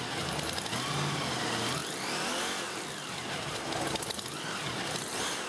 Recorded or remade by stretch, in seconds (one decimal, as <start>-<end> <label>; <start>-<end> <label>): 0.0-5.5 recorded